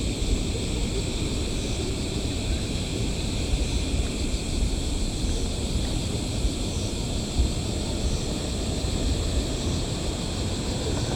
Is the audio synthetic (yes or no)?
yes